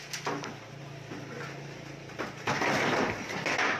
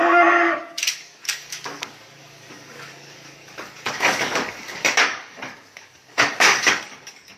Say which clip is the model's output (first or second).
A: second